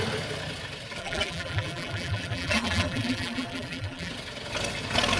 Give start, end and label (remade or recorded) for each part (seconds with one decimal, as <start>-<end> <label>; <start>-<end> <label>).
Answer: 0.0-1.0 recorded; 1.0-4.1 remade; 4.1-5.2 recorded